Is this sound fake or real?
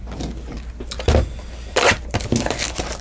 real